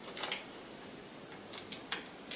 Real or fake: real